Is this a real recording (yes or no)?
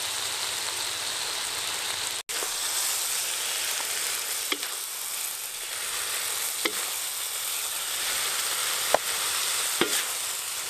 yes